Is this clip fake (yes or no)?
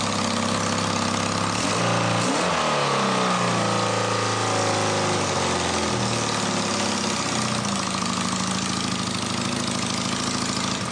no